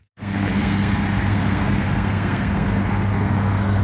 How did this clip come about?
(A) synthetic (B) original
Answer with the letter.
A